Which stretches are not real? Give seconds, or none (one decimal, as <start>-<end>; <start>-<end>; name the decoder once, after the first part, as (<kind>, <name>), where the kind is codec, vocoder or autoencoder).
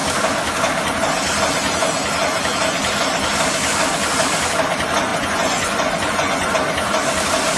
5.1-6.5 (vocoder, Vocos)